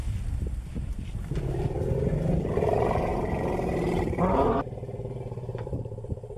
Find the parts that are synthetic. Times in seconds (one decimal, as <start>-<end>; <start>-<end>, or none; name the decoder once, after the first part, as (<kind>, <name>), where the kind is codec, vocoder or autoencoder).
2.1-6.4 (vocoder, BigVGAN v2)